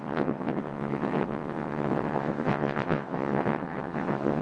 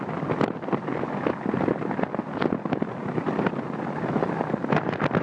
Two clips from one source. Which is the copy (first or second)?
first